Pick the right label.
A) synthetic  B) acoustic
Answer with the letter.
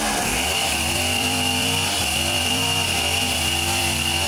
A